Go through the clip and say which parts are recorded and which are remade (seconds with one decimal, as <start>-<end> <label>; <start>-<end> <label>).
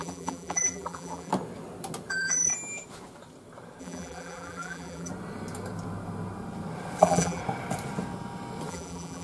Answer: 0.0-1.3 remade; 1.3-2.1 recorded; 2.1-2.5 remade; 2.5-3.8 recorded; 3.8-5.1 remade; 5.1-7.0 recorded; 7.0-7.4 remade; 7.4-8.7 recorded; 8.7-9.2 remade